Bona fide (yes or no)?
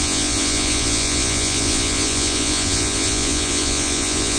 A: no